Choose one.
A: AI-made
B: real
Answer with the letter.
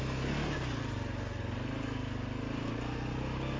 B